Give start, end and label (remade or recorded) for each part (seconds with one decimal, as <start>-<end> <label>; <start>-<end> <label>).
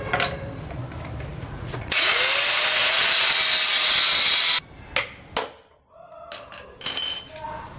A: 0.0-1.3 recorded; 1.3-2.1 remade; 2.1-2.8 recorded; 2.8-3.3 remade; 3.3-7.8 recorded